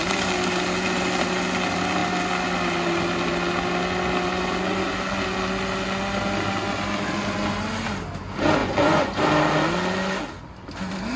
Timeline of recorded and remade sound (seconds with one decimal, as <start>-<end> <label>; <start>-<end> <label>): 0.0-8.6 recorded; 8.6-9.2 remade; 9.2-11.2 recorded